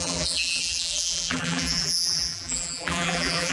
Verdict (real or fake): fake